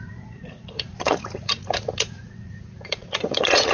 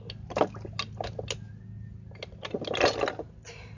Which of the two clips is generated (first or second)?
first